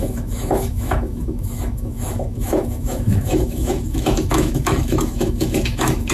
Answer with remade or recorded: remade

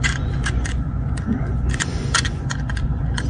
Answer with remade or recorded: remade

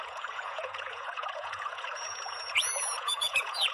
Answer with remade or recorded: remade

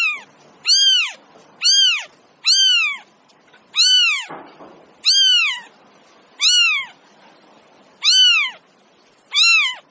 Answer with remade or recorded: recorded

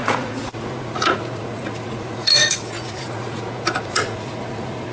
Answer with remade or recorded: remade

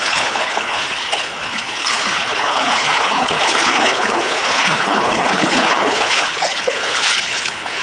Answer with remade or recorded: remade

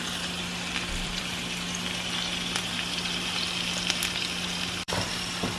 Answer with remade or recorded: remade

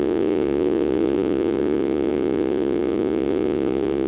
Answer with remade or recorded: remade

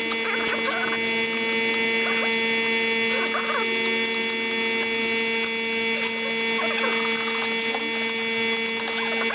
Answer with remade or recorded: recorded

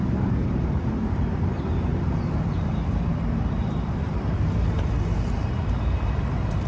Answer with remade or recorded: remade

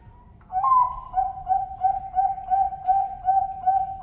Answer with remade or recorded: recorded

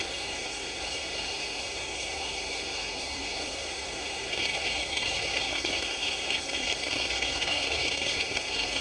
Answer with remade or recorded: remade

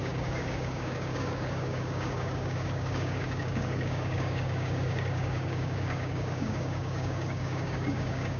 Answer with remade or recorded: remade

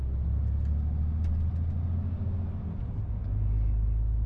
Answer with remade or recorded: recorded